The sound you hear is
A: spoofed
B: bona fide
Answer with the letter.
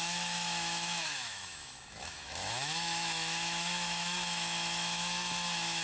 A